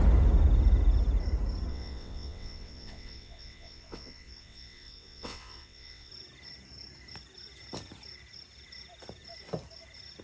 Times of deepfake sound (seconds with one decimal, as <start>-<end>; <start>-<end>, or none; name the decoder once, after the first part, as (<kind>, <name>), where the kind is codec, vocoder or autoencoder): 1.7-6.1 (vocoder, WaveNeXt)